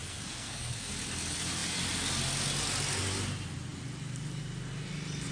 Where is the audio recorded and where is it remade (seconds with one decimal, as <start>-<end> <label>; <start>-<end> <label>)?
0.0-0.9 remade; 0.9-5.3 recorded